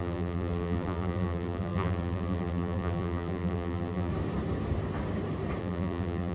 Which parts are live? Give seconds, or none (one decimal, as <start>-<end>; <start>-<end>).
4.1-5.6